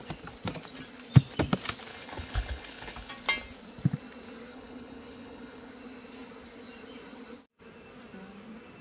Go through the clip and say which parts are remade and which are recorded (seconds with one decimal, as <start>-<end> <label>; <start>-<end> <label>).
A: 0.0-1.9 recorded; 1.9-3.1 remade; 3.1-4.5 recorded; 4.5-5.7 remade; 5.7-8.8 recorded